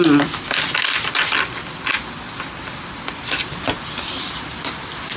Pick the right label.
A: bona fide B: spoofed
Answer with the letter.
A